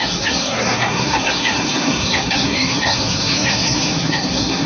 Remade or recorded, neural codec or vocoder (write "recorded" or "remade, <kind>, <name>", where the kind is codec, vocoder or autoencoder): remade, codec, SNAC